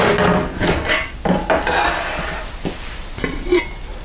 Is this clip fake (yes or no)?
no